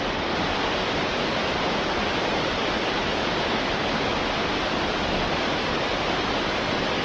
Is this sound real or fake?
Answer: real